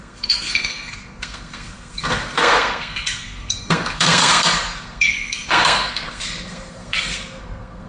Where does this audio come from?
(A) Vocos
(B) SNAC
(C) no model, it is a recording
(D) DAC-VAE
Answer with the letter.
B